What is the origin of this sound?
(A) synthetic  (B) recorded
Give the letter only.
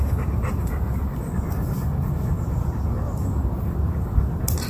B